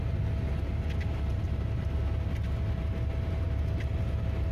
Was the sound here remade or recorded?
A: recorded